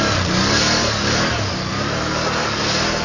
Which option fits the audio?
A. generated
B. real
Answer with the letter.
B